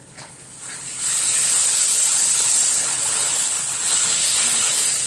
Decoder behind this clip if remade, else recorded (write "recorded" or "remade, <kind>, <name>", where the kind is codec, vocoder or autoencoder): remade, codec, HILCodec